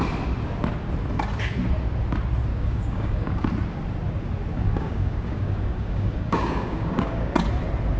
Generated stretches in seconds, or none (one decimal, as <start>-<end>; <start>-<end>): 2.5-3.5; 4.5-7.3